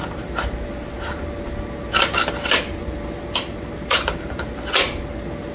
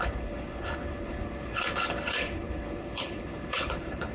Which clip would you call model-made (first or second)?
second